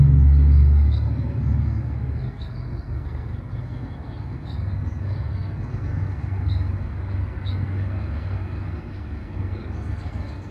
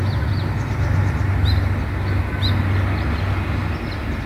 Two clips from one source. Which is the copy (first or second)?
first